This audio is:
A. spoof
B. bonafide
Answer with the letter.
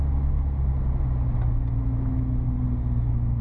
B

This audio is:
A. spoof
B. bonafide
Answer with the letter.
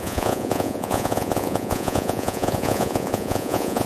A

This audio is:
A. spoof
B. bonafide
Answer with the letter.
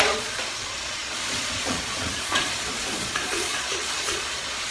A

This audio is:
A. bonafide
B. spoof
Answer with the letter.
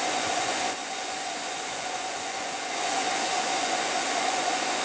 B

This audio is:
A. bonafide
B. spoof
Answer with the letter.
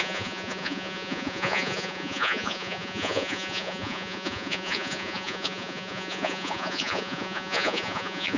B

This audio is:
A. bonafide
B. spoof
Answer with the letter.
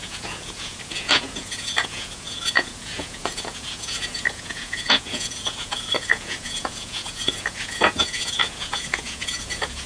B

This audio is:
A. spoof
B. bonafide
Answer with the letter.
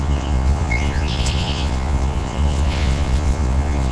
A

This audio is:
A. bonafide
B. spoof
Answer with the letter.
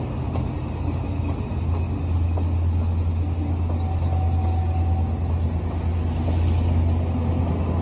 A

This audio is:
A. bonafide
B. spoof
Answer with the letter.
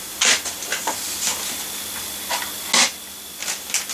A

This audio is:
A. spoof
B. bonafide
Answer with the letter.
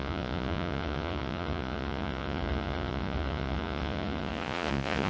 A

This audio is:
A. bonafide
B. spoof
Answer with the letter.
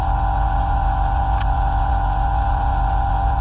B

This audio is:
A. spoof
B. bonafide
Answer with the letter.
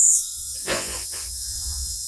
A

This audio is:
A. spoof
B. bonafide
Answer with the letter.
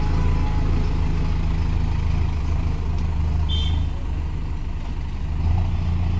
B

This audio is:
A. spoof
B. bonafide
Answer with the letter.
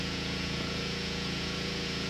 A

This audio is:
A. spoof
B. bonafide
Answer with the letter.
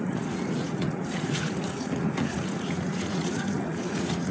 A